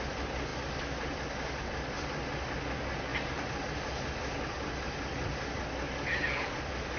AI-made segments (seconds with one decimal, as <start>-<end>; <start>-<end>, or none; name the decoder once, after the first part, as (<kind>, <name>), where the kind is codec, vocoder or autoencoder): none